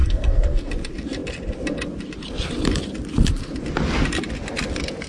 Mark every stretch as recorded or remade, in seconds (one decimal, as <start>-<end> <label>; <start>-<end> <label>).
0.0-0.7 remade; 0.7-5.1 recorded